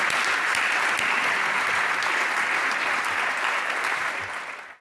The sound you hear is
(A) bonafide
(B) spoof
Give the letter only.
A